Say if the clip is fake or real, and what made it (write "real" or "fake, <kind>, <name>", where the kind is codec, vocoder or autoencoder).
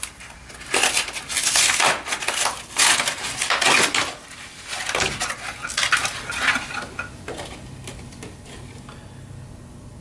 real